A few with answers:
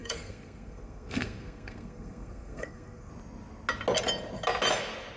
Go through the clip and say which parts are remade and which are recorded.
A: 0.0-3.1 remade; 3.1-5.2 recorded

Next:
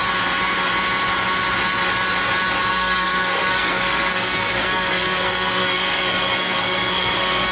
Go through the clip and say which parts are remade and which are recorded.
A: 0.0-2.7 recorded; 2.7-7.5 remade

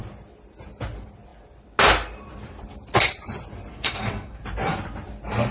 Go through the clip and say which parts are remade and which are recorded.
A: 0.0-3.7 recorded; 3.7-4.4 remade; 4.4-5.5 recorded

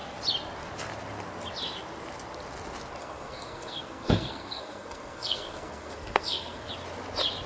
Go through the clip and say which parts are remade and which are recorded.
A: 0.0-3.0 recorded; 3.0-6.7 remade; 6.7-7.5 recorded

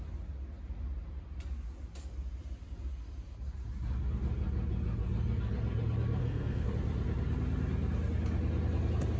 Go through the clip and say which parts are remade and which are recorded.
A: 0.0-6.2 recorded; 6.2-6.7 remade; 6.7-9.2 recorded

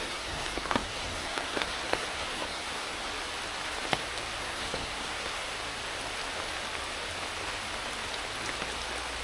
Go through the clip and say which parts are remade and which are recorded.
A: 0.0-3.1 remade; 3.1-4.4 recorded; 4.4-5.5 remade; 5.5-9.2 recorded

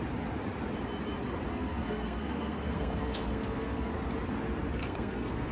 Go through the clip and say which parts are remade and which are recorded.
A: 0.0-1.5 recorded; 1.5-3.9 remade; 3.9-4.8 recorded; 4.8-5.5 remade